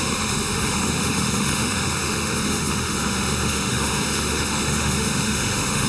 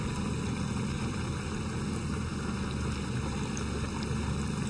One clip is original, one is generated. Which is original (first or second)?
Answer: second